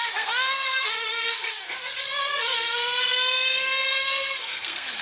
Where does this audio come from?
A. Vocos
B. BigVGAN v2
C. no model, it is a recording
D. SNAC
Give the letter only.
D